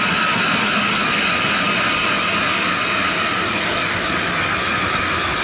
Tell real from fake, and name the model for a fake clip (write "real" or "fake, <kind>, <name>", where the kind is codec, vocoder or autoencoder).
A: real